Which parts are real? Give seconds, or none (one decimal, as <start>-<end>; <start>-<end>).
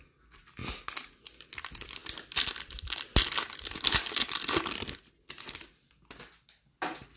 0.0-7.2